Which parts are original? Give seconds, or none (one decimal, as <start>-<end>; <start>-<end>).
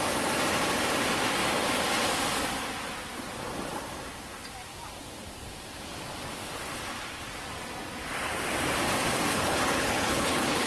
0.0-9.3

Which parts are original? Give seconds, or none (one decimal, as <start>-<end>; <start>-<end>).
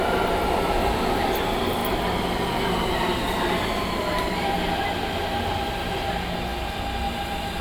0.0-7.6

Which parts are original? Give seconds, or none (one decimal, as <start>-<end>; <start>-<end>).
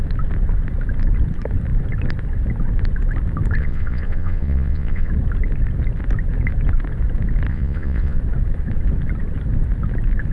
0.0-3.6; 5.1-7.5; 8.2-10.3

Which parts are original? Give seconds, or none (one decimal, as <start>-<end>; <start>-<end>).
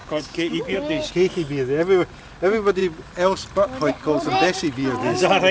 1.1-5.5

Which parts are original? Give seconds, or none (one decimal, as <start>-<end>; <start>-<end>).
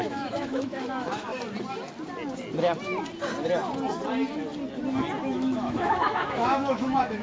1.3-5.2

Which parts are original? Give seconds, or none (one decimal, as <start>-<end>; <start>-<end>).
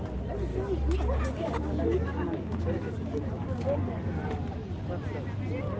0.0-0.5; 4.0-5.8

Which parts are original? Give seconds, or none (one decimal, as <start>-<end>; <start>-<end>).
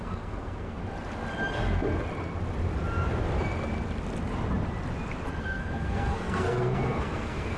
0.8-5.4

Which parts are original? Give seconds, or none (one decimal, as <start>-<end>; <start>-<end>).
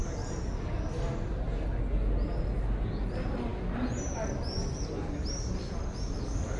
0.0-6.6